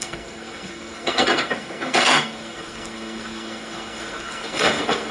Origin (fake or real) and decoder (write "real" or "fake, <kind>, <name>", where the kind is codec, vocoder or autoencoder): fake, codec, SNAC